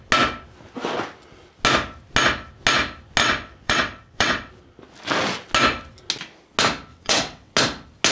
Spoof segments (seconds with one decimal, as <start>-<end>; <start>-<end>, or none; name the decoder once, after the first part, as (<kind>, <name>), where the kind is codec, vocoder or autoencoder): 3.2-4.5 (vocoder, WaveNeXt); 6.9-7.5